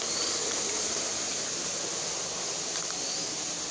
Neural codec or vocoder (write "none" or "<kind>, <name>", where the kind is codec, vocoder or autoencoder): none